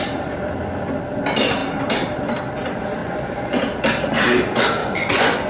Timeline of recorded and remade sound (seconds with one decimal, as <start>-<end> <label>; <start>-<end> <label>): 0.0-3.0 recorded; 3.0-3.6 remade; 3.6-4.8 recorded; 4.8-5.5 remade